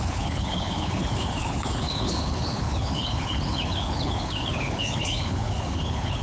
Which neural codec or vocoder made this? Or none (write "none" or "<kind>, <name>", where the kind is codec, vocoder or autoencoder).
codec, HILCodec